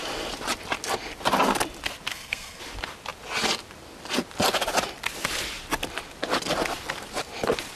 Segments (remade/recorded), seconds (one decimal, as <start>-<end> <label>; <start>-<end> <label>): 0.0-2.1 recorded; 2.1-2.6 remade; 2.6-7.8 recorded

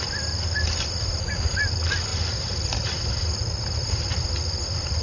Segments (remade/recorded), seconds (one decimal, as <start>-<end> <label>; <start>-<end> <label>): 0.0-5.0 recorded